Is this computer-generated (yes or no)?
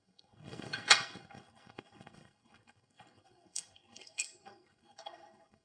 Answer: yes